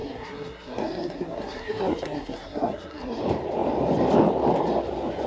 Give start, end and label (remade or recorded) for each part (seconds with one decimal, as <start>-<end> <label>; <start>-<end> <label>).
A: 0.0-3.2 remade; 3.2-5.3 recorded